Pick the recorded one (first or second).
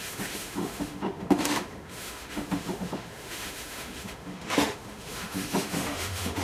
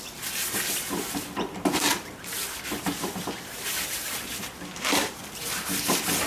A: second